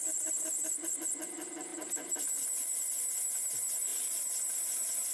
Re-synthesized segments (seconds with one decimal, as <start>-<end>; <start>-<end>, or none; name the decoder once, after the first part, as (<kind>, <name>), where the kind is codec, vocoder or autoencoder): 0.0-1.0 (vocoder, BigVGAN v2); 1.7-2.9; 3.9-4.6